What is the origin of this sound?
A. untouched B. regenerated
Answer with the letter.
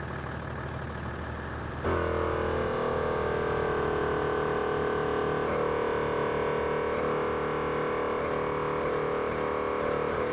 A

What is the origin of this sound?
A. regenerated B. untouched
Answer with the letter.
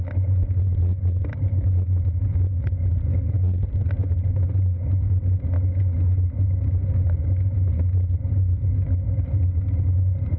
B